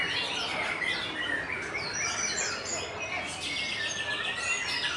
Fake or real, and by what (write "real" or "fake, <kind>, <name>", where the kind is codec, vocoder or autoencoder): real